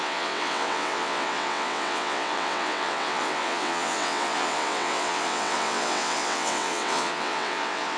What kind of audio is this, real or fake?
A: fake